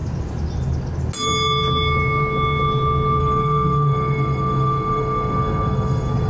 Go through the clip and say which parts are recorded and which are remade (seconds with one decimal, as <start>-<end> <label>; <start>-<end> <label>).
0.0-3.2 recorded; 3.2-6.3 remade